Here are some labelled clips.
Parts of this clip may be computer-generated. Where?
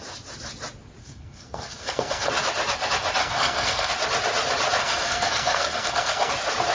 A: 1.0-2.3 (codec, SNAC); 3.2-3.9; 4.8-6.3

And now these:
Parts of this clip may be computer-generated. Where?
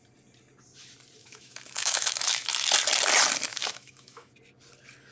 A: 1.2-2.7 (autoencoder, DAC-VAE); 3.5-4.3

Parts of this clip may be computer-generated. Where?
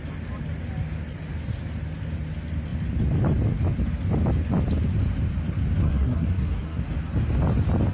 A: 5.8-6.8 (codec, SNAC)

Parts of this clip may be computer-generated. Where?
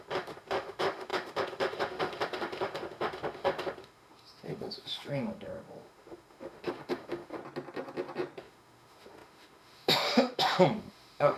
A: 0.0-7.4 (autoencoder, DAC-VAE); 8.4-11.4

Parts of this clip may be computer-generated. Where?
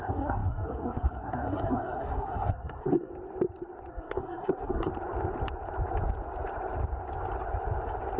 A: 0.0-3.1 (codec, SNAC); 3.9-4.9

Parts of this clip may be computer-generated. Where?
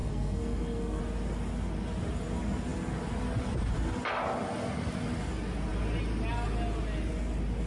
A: 0.0-1.0 (codec, SNAC)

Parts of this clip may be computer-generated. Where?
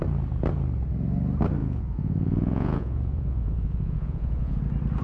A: 1.6-4.6 (vocoder, Vocos)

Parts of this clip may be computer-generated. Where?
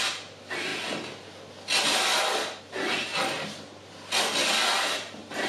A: none